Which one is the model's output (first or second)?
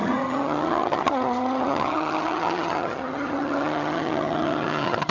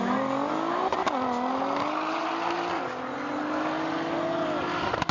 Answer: first